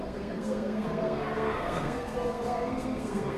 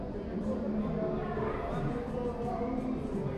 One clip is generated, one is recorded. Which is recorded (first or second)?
second